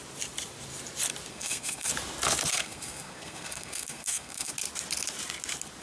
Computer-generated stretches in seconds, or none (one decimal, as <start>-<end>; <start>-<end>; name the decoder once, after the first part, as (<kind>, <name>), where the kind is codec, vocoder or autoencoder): 1.3-1.9 (codec, SNAC); 2.5-4.5